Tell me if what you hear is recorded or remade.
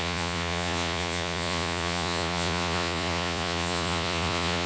remade